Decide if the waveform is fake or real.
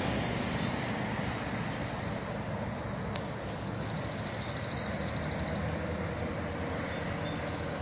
real